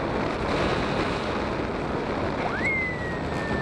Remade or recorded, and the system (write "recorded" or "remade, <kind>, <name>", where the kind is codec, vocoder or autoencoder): recorded